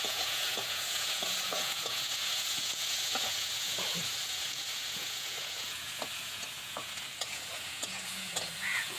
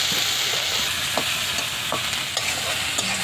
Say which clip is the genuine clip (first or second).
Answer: second